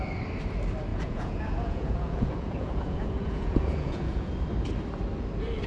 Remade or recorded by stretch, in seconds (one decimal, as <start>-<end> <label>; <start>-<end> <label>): 0.0-0.9 recorded; 0.9-4.3 remade; 4.3-5.7 recorded